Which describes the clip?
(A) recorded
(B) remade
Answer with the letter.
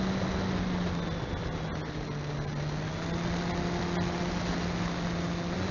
A